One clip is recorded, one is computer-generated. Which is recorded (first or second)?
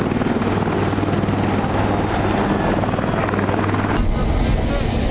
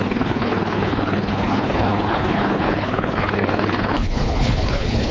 first